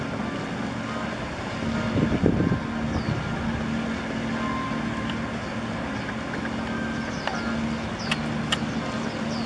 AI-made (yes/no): no